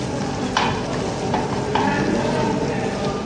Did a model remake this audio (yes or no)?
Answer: no